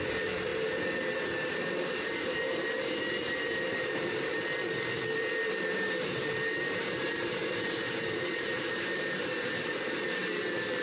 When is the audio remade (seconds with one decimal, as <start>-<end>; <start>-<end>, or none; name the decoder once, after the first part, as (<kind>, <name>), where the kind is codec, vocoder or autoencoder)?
0.0-4.3 (vocoder, BigVGAN v2); 5.5-10.8

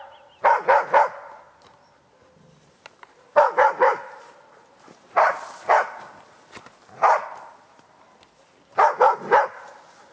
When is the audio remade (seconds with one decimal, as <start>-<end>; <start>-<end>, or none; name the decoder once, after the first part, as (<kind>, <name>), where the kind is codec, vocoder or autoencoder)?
2.2-6.7 (vocoder, BigVGAN v2)